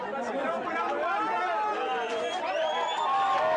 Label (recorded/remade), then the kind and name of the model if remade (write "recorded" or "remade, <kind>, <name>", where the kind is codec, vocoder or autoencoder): recorded